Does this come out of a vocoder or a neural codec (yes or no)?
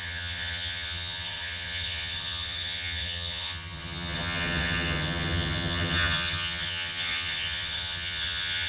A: yes